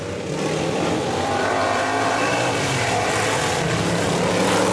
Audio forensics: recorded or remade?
recorded